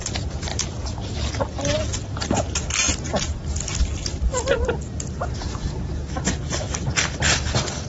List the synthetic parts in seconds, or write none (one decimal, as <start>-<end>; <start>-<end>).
none